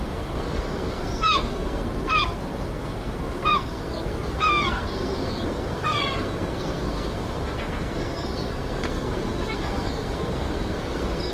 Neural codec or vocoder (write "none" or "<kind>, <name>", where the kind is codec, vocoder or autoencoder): codec, SNAC